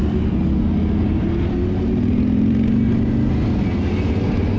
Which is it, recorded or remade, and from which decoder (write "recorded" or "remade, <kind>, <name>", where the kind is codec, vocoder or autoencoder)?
recorded